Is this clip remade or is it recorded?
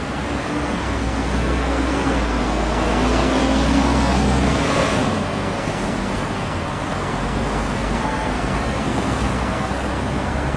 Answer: remade